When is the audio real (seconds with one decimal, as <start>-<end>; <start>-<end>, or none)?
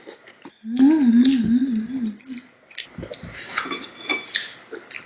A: 0.0-3.5; 4.1-5.1